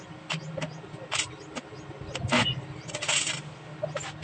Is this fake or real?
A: real